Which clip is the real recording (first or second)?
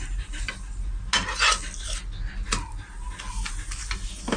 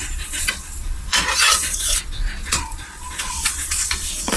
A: first